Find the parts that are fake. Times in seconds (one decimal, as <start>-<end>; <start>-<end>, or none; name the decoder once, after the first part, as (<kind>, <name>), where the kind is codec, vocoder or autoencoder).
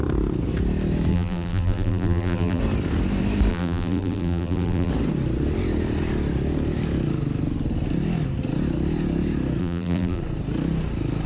1.1-2.6 (vocoder, BigVGAN v2); 3.5-4.9; 9.6-10.2